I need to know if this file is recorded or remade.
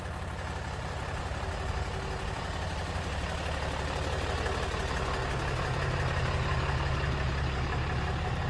recorded